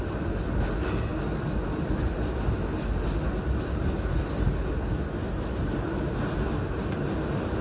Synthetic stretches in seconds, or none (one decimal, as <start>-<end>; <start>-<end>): 1.1-2.1